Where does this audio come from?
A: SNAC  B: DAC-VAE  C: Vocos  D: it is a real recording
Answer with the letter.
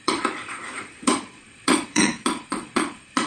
C